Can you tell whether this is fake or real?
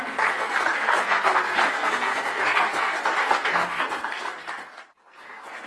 fake